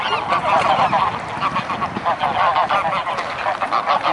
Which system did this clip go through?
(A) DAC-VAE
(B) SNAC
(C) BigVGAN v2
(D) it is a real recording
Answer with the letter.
D